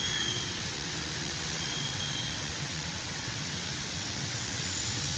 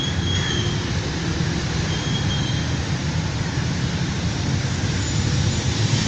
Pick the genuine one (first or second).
second